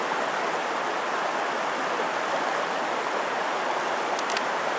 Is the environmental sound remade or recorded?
recorded